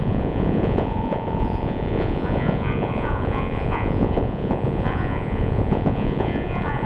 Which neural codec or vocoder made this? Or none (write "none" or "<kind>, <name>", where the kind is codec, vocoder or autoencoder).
vocoder, Vocos